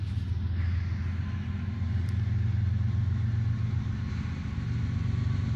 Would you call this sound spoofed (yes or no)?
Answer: no